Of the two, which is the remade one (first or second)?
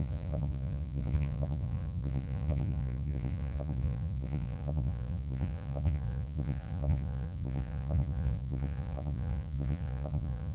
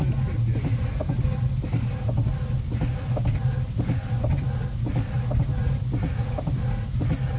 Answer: first